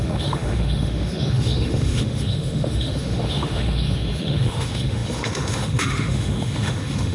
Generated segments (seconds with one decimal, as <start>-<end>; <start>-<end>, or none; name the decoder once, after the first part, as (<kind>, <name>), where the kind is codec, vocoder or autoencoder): 0.0-7.1 (autoencoder, DAC-VAE)